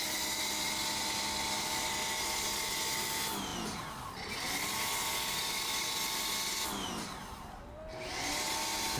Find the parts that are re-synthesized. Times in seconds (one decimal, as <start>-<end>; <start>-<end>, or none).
none